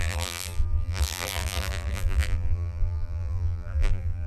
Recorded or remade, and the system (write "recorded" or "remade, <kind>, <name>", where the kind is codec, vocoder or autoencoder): remade, vocoder, BigVGAN v2